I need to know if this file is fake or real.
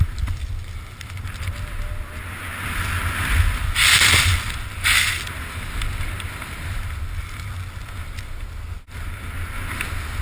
real